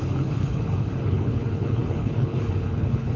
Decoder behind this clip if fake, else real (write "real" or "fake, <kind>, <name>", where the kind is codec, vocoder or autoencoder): fake, codec, HILCodec